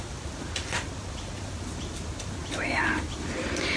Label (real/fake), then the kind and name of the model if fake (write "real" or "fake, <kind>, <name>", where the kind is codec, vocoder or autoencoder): real